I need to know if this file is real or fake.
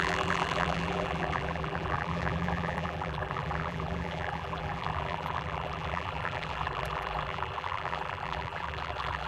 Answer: fake